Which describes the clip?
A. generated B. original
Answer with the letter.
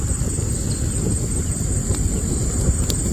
B